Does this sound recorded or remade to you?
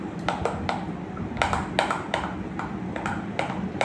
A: recorded